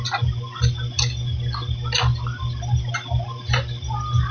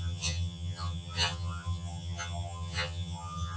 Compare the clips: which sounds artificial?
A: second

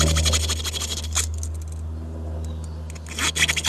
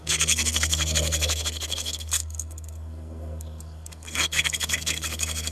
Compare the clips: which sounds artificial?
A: second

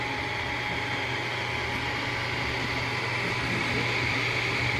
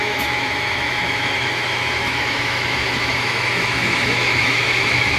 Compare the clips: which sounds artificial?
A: second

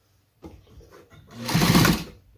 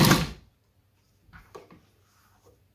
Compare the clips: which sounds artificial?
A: first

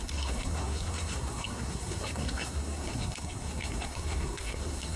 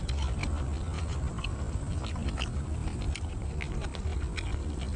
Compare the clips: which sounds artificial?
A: first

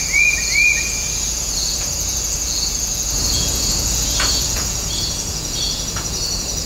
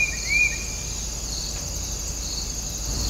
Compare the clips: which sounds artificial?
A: first